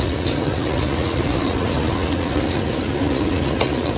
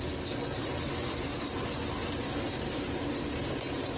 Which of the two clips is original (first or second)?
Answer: second